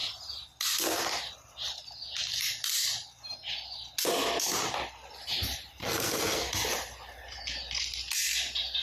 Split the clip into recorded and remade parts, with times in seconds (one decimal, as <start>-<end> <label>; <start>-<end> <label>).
0.0-5.8 recorded; 5.8-6.5 remade; 6.5-8.8 recorded